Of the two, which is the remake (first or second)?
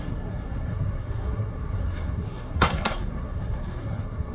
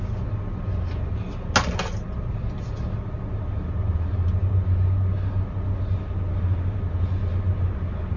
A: first